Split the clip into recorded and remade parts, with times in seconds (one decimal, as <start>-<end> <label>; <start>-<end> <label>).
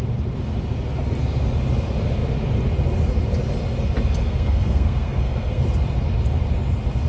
0.0-4.2 recorded; 4.2-5.6 remade; 5.6-7.1 recorded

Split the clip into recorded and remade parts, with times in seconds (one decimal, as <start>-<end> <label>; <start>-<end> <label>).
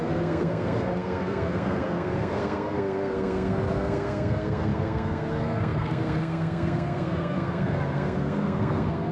0.0-9.1 remade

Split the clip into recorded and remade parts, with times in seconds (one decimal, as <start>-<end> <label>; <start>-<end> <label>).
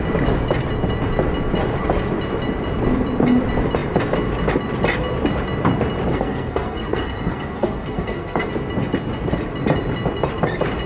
0.0-6.1 recorded; 6.1-8.5 remade; 8.5-10.9 recorded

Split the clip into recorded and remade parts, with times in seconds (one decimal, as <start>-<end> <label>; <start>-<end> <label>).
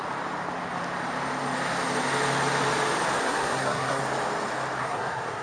0.0-3.2 recorded; 3.2-4.0 remade; 4.0-4.8 recorded; 4.8-5.4 remade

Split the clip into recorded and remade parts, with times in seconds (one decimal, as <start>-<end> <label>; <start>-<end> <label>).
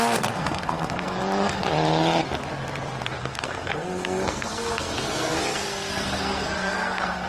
0.0-1.6 remade; 1.6-3.2 recorded; 3.2-7.3 remade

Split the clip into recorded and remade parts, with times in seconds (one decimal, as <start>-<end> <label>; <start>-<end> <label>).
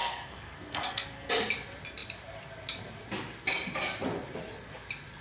0.0-1.3 remade; 1.3-5.2 recorded